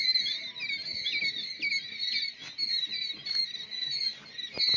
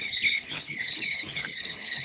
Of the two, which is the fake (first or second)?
second